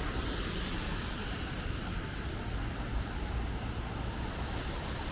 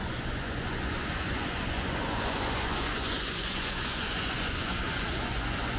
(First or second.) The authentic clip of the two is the first